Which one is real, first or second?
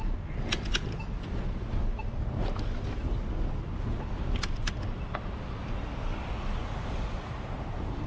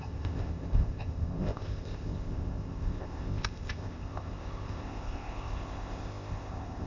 first